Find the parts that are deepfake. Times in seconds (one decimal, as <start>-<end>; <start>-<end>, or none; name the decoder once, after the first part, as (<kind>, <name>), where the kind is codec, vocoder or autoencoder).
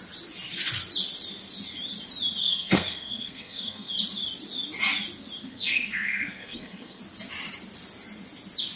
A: 2.4-3.9 (codec, SNAC); 5.5-7.0